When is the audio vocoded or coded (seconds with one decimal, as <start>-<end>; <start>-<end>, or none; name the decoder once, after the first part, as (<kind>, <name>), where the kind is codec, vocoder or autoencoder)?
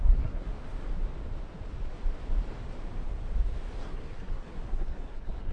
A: 0.0-0.5 (codec, SNAC); 3.8-5.5